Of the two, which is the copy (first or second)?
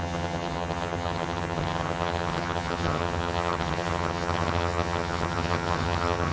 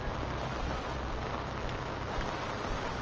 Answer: first